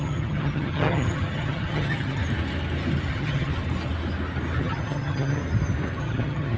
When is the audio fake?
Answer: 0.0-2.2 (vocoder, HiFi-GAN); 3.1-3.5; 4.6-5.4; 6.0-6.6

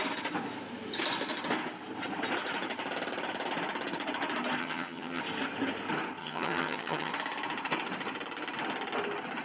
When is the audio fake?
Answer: 4.6-5.2 (vocoder, HiFi-GAN); 6.2-7.1

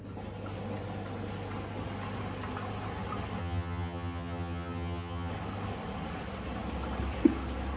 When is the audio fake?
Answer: 3.4-5.3 (vocoder, HiFi-GAN)

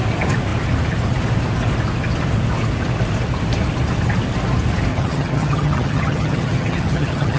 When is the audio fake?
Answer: 4.9-7.4 (vocoder, HiFi-GAN)